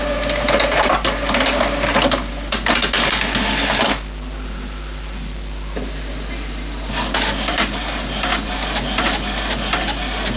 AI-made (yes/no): no